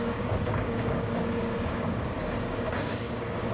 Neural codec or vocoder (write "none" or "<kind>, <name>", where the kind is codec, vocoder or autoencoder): codec, DAC